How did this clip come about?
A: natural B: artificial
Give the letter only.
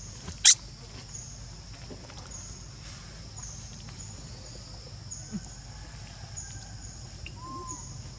A